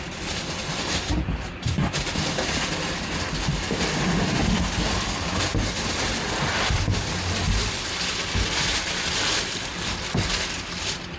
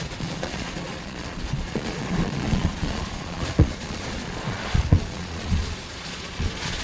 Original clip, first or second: first